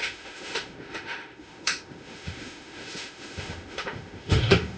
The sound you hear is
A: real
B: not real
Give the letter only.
B